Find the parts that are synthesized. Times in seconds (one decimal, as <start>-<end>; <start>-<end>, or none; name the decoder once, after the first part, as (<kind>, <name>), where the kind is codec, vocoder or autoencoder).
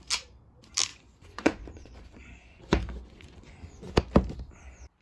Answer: 0.9-3.9 (vocoder, Vocos)